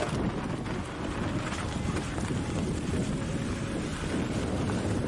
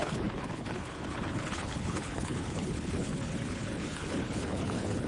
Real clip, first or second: first